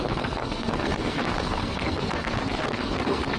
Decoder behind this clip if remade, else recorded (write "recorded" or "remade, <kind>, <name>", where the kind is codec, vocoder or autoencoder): remade, codec, SNAC